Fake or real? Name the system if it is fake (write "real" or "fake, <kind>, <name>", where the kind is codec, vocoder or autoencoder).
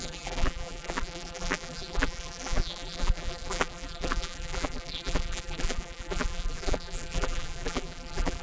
fake, vocoder, BigVGAN v2